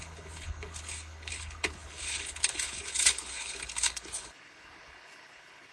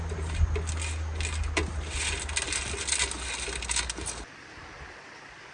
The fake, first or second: first